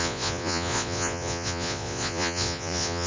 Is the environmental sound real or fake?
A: fake